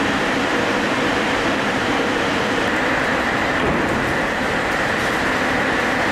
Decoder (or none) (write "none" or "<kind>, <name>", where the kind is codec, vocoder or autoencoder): vocoder, BigVGAN v2